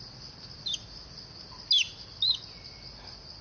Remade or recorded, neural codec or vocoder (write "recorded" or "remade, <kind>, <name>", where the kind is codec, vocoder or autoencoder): recorded